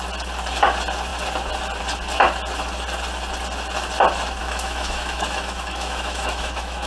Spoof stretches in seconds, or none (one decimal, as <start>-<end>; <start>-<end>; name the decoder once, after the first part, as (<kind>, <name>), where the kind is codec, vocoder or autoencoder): 4.4-6.9 (autoencoder, DAC-VAE)